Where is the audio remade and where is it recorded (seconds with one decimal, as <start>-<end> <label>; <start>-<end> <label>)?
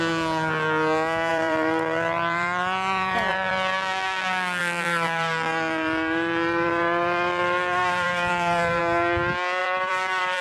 0.0-1.3 recorded; 1.3-3.5 remade; 3.5-4.6 recorded; 4.6-8.8 remade; 8.8-9.6 recorded; 9.6-10.4 remade